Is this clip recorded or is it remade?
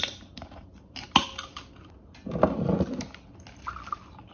recorded